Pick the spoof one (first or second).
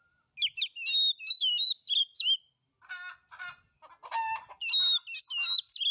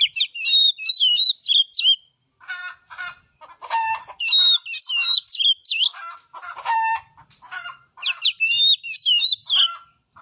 second